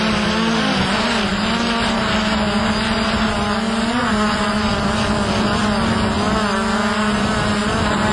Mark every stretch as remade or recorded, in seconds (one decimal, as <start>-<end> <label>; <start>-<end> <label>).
0.0-4.0 recorded; 4.0-4.7 remade; 4.7-8.1 recorded